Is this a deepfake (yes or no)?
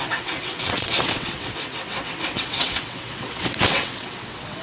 yes